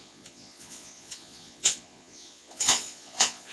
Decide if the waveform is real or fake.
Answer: fake